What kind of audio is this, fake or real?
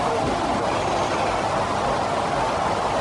real